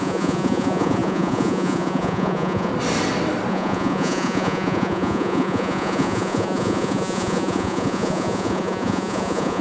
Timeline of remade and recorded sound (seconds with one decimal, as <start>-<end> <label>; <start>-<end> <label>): 0.0-2.7 remade; 2.7-3.5 recorded; 3.5-9.6 remade